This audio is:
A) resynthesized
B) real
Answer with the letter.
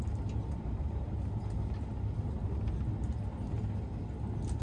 B